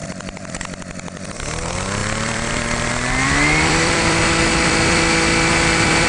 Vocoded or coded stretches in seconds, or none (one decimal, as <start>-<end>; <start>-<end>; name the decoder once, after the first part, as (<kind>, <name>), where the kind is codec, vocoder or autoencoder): 0.0-0.5 (vocoder, BigVGAN v2); 2.0-6.1